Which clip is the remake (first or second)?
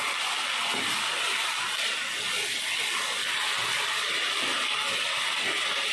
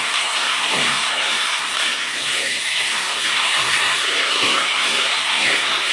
second